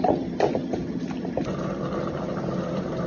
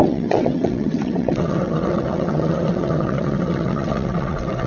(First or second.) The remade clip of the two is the second